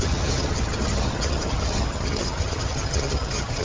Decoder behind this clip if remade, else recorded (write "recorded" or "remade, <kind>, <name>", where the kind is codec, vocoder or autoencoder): remade, vocoder, HiFi-GAN